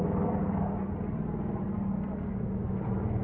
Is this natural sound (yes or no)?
yes